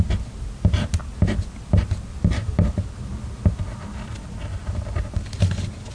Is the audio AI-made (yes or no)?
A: no